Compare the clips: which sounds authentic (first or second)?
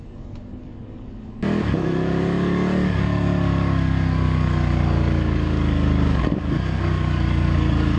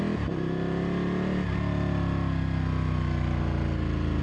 second